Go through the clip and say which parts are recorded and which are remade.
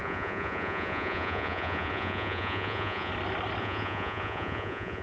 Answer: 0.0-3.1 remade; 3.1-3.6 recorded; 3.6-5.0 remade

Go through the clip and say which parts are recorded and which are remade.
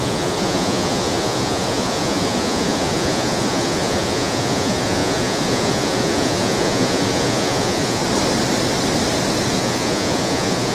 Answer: 0.0-8.0 remade; 8.0-9.5 recorded; 9.5-10.7 remade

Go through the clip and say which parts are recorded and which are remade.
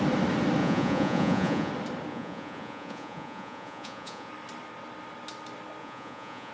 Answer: 0.0-0.6 recorded; 0.6-1.7 remade; 1.7-2.1 recorded; 2.1-4.3 remade; 4.3-5.8 recorded; 5.8-6.5 remade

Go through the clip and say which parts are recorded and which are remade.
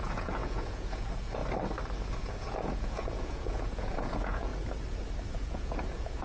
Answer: 0.0-1.4 remade; 1.4-2.2 recorded; 2.2-4.5 remade; 4.5-5.3 recorded; 5.3-6.2 remade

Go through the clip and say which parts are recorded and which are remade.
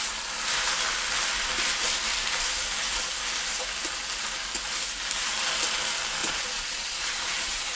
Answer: 0.0-6.2 recorded; 6.2-7.8 remade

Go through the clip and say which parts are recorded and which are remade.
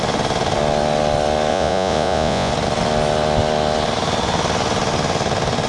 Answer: 0.0-1.5 recorded; 1.5-2.5 remade; 2.5-5.7 recorded